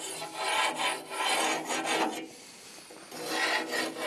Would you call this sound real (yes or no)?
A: yes